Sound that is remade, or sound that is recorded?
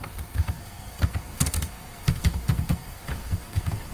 remade